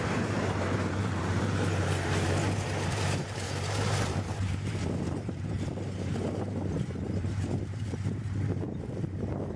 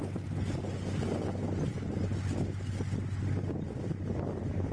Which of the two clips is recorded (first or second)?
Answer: second